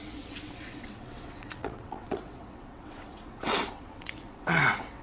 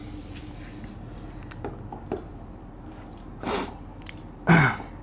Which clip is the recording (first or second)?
second